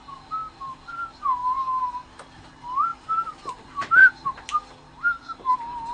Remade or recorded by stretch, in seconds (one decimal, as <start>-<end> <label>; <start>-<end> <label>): 0.0-5.9 recorded